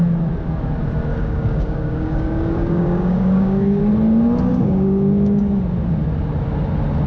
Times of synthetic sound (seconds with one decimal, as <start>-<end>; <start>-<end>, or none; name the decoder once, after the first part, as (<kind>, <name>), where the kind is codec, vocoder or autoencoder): 1.1-3.8 (codec, DAC); 4.5-5.6